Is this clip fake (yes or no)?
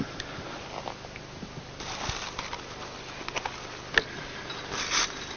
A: no